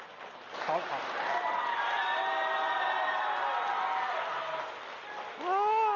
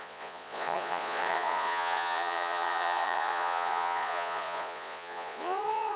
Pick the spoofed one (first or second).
second